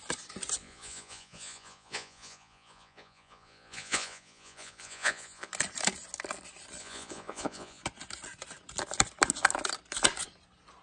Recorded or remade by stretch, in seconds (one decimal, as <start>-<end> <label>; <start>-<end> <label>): 0.0-0.6 recorded; 0.6-5.5 remade; 5.5-6.8 recorded; 6.8-7.8 remade; 7.8-10.8 recorded